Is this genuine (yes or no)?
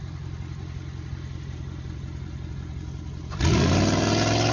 yes